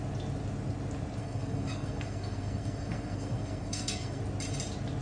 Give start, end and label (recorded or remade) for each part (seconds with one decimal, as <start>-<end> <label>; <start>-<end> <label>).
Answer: 0.0-1.2 recorded; 1.2-4.2 remade; 4.2-5.0 recorded